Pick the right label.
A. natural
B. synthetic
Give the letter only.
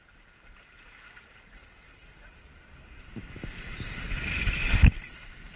A